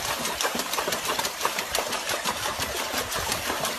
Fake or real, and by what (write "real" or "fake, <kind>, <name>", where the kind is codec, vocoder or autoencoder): fake, vocoder, BigVGAN v2